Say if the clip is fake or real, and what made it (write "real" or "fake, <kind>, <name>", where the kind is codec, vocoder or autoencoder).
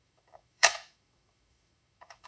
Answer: fake, autoencoder, DAC-VAE